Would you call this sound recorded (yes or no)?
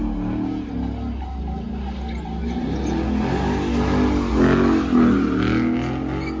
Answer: yes